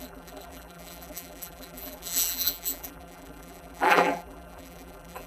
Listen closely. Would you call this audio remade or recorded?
remade